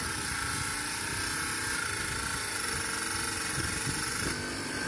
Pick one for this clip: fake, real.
real